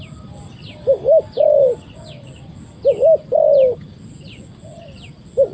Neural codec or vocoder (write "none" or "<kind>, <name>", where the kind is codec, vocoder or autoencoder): none